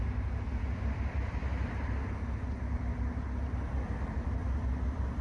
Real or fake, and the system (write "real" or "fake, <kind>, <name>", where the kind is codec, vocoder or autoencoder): real